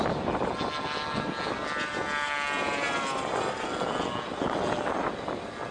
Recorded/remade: recorded